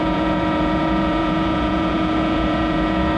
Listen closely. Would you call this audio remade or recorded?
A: remade